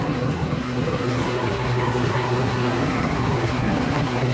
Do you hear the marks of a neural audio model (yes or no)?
yes